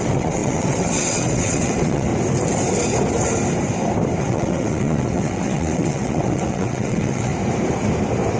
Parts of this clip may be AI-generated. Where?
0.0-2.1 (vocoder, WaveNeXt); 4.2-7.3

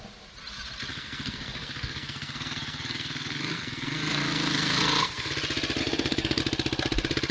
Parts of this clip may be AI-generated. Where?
0.9-5.3 (codec, SNAC); 5.8-6.4